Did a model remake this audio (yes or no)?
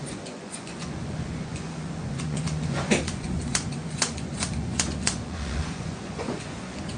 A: yes